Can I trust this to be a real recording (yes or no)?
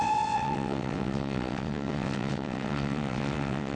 no